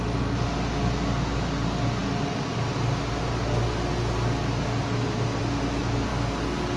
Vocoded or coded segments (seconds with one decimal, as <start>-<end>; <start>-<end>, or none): none